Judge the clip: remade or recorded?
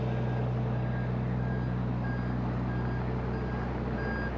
recorded